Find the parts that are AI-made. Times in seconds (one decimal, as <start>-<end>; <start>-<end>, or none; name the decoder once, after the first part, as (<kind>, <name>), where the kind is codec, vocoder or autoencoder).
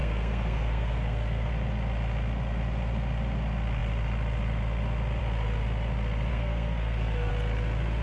0.0-1.5 (codec, SNAC); 6.3-7.3